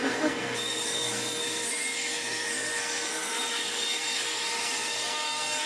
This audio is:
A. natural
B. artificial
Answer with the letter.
B